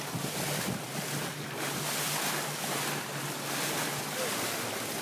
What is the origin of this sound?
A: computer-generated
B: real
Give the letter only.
B